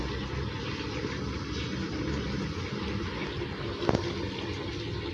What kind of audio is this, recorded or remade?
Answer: recorded